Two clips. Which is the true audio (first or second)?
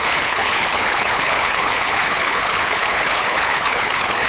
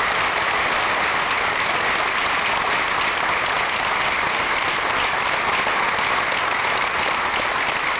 second